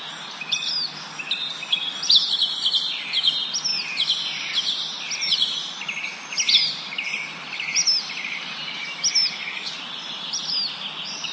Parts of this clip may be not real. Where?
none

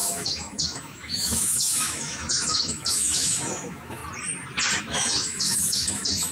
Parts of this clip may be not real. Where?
0.0-4.0; 4.8-6.3